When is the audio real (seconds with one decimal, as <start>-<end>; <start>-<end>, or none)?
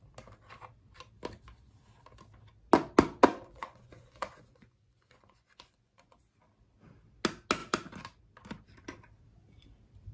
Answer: 0.0-3.3; 6.2-10.1